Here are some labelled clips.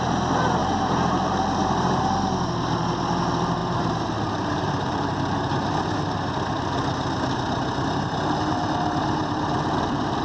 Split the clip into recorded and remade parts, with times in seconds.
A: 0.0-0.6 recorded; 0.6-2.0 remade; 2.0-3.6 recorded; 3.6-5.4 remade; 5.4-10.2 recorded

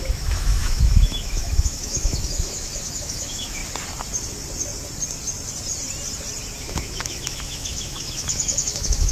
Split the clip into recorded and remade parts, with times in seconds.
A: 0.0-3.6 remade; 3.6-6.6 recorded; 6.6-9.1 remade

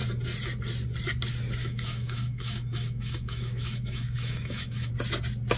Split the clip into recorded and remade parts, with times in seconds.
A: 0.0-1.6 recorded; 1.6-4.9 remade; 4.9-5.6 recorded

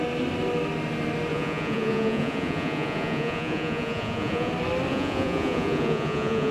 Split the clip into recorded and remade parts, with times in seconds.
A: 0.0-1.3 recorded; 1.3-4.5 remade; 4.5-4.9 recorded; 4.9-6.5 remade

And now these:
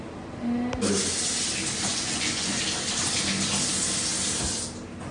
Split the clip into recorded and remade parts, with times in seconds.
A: 0.0-1.9 recorded; 1.9-2.6 remade; 2.6-5.1 recorded